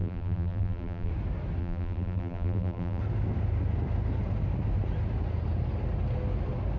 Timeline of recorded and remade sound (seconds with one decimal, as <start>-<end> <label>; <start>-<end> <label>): 0.0-1.1 remade; 1.1-1.6 recorded; 1.6-3.0 remade; 3.0-6.8 recorded